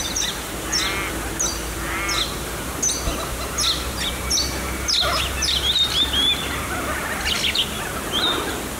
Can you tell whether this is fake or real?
real